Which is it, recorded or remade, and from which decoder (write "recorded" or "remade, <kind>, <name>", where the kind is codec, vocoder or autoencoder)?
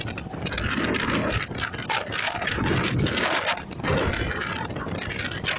recorded